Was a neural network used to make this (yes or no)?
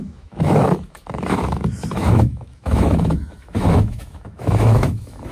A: yes